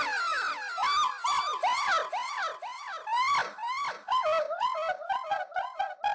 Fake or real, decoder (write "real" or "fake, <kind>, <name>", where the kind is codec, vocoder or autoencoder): real